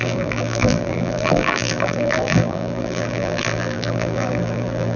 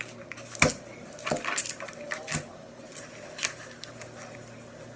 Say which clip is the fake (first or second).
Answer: first